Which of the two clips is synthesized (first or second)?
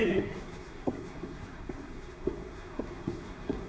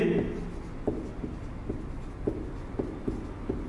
first